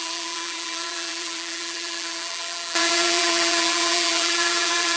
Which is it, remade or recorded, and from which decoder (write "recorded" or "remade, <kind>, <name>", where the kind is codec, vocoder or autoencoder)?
remade, vocoder, BigVGAN v2